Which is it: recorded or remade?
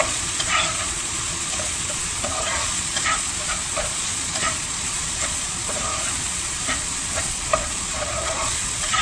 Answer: remade